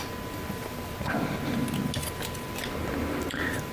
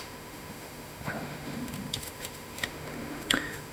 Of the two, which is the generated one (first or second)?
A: second